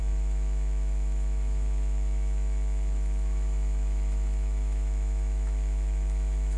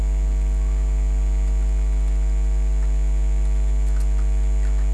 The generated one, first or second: first